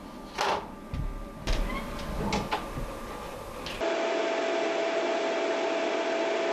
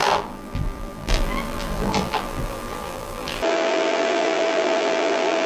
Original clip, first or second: first